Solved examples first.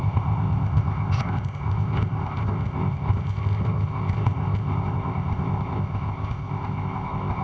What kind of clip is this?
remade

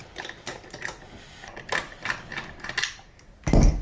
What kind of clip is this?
recorded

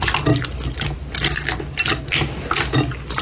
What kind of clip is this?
recorded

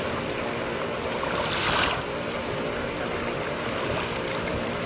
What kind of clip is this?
recorded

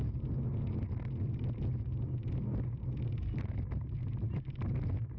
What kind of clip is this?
recorded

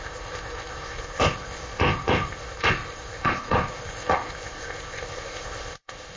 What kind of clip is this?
remade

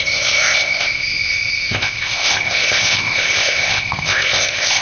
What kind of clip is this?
remade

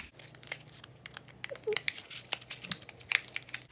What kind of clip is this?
recorded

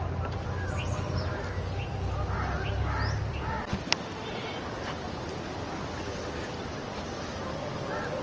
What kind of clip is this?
recorded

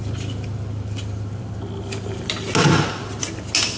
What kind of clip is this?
recorded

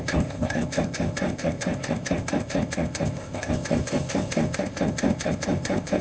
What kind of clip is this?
remade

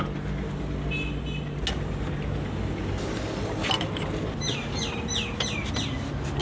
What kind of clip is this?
recorded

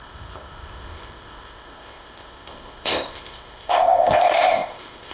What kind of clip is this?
remade